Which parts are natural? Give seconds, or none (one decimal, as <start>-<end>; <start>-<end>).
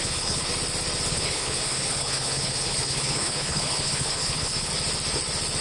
0.5-1.1; 4.7-5.6